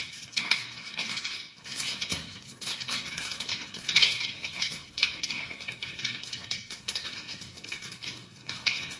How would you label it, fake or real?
fake